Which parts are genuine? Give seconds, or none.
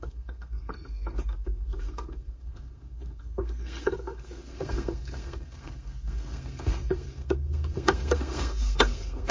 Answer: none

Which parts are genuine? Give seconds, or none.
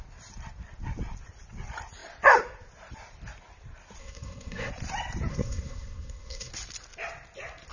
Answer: 0.0-4.0; 4.7-5.3; 6.5-7.7